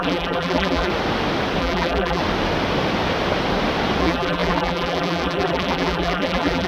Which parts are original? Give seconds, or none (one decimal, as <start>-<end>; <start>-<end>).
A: 0.9-1.6; 2.2-4.0